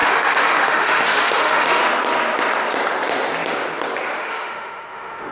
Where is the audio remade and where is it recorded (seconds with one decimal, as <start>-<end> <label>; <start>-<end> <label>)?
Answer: 0.0-1.8 remade; 1.8-4.2 recorded; 4.2-5.3 remade

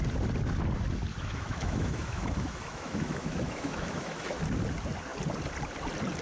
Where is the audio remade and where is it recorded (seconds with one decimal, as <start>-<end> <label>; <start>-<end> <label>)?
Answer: 0.0-1.1 recorded; 1.1-4.4 remade; 4.4-6.2 recorded